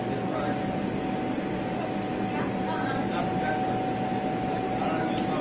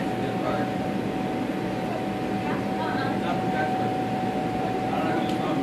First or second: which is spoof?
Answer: second